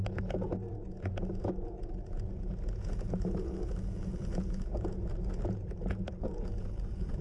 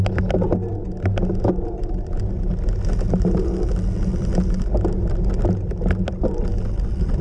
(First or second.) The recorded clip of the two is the second